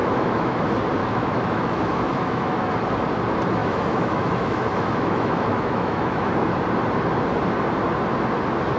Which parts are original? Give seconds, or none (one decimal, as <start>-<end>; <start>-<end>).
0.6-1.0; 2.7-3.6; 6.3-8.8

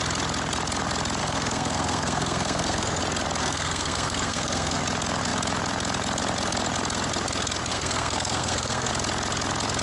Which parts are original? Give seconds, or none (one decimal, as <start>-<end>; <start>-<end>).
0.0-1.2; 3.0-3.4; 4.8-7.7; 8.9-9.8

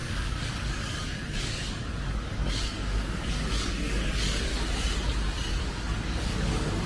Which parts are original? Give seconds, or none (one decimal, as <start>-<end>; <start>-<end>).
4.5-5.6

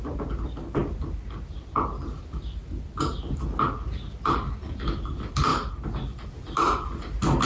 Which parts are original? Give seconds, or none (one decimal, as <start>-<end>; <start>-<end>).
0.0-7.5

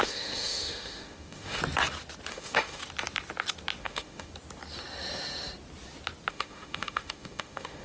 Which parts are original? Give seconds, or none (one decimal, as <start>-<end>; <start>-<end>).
1.6-2.3; 2.8-3.8; 4.3-6.3